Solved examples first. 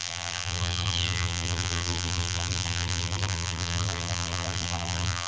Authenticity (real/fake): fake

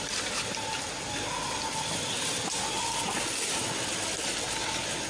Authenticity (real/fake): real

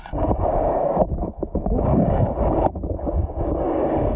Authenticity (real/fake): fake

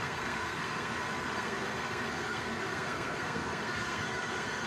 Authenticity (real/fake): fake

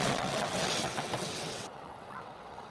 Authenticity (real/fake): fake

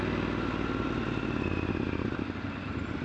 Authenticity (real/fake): real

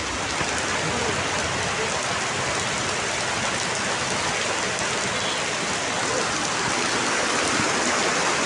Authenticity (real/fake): real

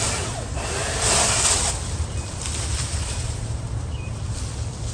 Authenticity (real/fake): fake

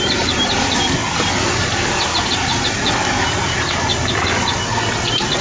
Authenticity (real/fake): real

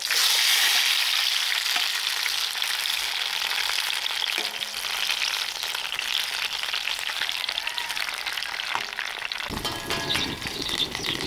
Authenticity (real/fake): real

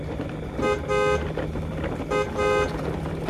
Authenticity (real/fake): real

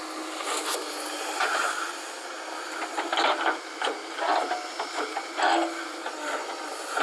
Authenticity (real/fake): real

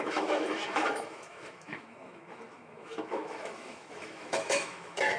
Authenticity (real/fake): fake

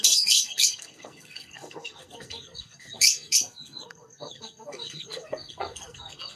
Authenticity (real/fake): fake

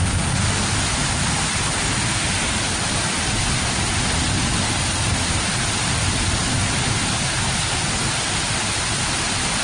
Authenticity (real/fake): real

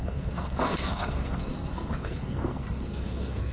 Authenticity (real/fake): fake